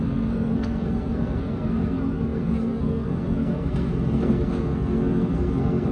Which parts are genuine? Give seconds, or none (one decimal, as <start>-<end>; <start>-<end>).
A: none